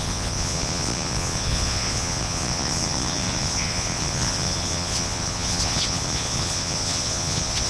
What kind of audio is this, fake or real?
fake